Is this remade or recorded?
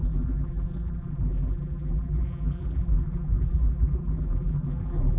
remade